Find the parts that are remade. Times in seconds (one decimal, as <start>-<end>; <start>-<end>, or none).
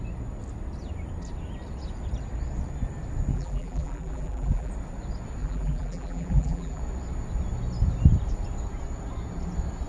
3.3-4.7; 5.4-6.8